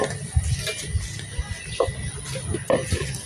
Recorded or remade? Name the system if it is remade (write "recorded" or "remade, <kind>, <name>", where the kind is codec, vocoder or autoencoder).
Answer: recorded